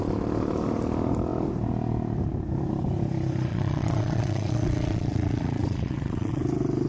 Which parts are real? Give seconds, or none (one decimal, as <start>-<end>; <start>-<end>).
0.0-3.5; 6.4-6.9